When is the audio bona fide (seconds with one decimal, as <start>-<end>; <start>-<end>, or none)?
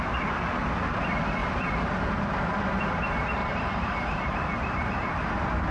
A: 0.0-3.4; 5.2-5.7